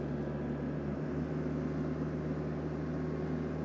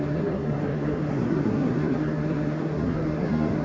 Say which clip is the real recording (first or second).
first